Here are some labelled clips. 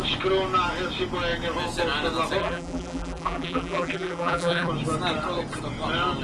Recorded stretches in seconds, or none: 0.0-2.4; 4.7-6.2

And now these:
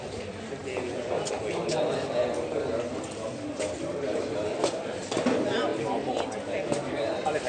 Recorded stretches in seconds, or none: 5.7-6.9

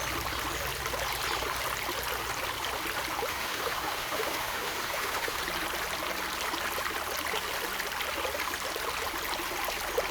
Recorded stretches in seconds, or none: 0.0-3.3; 5.4-10.1

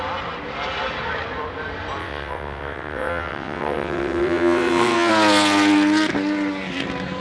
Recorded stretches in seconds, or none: 0.0-2.0; 5.1-7.2